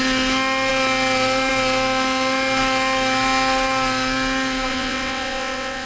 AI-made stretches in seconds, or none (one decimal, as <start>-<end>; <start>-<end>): 4.7-5.9